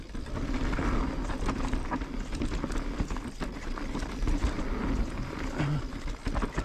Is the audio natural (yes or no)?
yes